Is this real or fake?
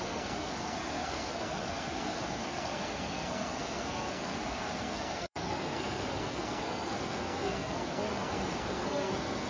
fake